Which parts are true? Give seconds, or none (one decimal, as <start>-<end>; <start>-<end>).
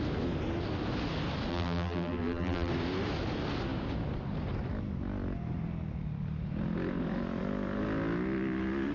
0.0-1.5; 2.7-8.9